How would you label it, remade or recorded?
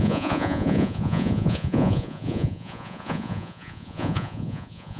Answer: remade